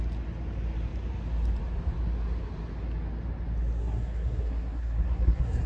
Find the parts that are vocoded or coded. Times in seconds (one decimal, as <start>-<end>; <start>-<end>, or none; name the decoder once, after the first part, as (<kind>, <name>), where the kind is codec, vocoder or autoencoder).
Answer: 3.8-5.7 (codec, SNAC)